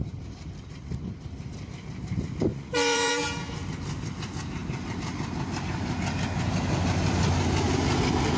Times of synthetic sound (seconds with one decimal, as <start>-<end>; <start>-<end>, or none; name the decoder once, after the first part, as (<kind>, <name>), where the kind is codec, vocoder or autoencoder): 2.5-3.1 (vocoder, Vocos)